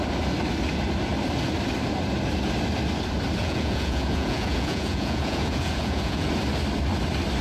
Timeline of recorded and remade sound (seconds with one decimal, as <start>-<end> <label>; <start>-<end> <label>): 0.0-3.4 recorded; 3.4-6.3 remade; 6.3-7.4 recorded